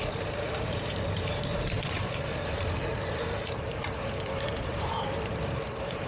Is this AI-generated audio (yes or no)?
yes